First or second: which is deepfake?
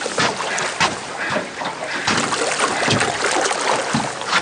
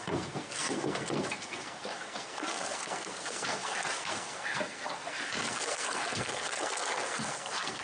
second